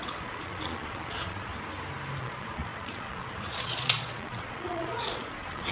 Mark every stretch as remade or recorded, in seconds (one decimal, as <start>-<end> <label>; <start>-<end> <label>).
0.0-1.5 remade; 1.5-2.2 recorded; 2.2-5.7 remade